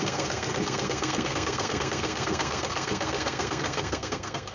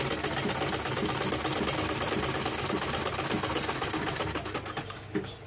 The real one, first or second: second